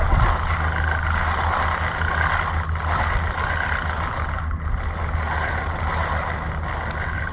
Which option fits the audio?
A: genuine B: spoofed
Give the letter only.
A